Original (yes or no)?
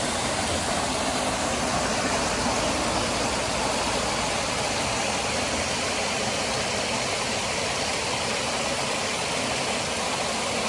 yes